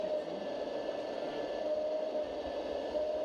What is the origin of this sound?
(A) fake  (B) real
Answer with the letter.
B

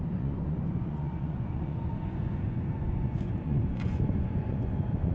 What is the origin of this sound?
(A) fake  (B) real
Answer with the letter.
A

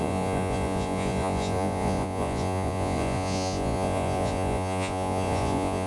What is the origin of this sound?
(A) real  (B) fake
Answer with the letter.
B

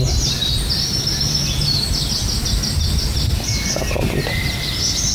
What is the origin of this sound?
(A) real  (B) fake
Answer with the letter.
A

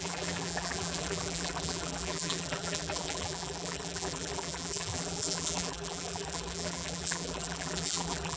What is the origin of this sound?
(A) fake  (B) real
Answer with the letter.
A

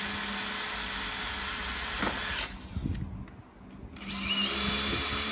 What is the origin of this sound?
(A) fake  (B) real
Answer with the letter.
B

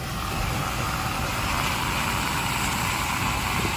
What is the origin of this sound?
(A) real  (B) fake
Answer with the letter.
A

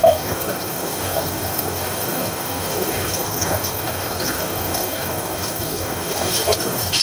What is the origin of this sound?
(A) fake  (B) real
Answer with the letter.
A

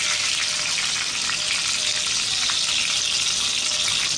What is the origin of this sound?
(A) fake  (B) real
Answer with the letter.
B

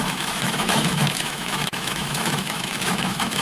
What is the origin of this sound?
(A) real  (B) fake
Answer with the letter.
B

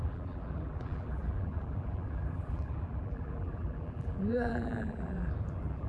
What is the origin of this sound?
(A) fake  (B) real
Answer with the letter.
A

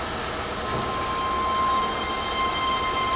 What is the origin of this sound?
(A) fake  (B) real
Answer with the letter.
B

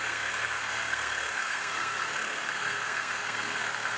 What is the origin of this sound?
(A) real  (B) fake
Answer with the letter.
B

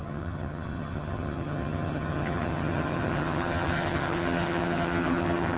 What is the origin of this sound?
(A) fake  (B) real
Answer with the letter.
A